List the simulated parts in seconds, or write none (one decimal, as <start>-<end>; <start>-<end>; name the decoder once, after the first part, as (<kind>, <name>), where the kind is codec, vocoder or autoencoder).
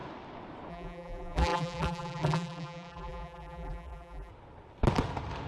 0.7-4.3 (vocoder, BigVGAN v2)